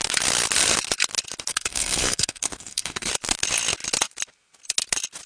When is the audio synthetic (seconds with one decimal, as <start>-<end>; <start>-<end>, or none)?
1.5-3.1